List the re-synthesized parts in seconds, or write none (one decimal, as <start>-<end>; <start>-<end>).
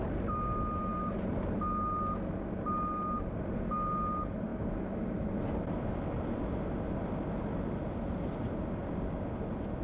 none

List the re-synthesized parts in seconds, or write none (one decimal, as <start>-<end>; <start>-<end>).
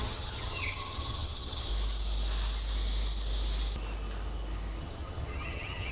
0.0-1.7; 4.8-5.9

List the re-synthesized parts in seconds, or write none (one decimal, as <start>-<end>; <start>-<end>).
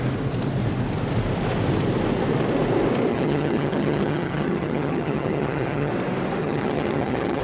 3.1-5.9; 6.4-7.4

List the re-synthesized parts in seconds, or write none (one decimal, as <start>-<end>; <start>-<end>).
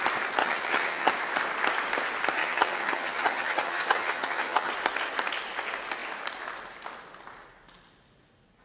0.4-1.1; 2.4-4.7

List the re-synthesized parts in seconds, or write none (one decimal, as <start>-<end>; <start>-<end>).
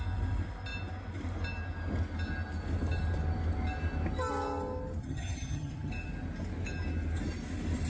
5.0-5.9